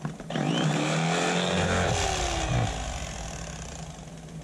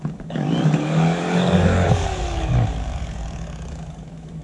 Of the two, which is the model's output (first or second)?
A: second